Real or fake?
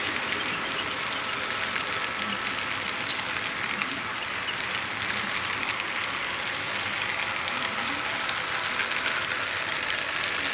real